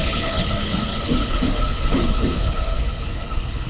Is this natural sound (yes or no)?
no